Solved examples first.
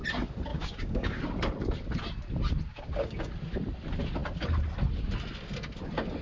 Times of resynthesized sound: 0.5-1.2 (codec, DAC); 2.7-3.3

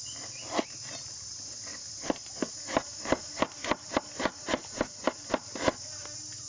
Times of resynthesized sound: 1.7-5.6 (vocoder, BigVGAN v2)